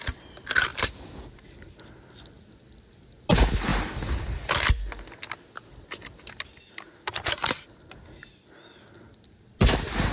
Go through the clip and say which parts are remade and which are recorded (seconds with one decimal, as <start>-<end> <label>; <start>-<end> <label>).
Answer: 0.0-0.7 recorded; 0.7-1.8 remade; 1.8-10.1 recorded